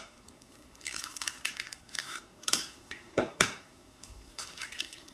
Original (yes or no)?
no